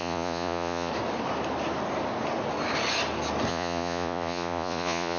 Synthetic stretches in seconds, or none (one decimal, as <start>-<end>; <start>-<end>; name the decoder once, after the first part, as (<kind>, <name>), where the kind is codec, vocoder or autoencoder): 0.0-0.9 (vocoder, Vocos); 3.5-5.2